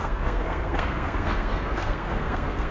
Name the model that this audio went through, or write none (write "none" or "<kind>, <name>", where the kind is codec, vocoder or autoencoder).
codec, SNAC